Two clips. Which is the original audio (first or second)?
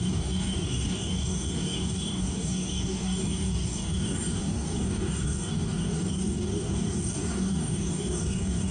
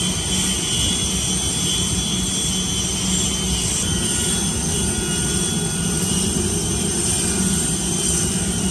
second